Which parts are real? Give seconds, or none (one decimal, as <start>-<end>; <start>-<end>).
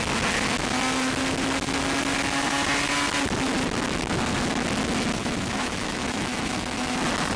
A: 0.0-5.2; 7.0-7.4